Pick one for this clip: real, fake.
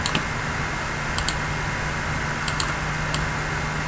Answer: real